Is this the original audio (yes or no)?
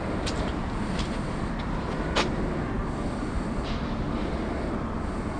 yes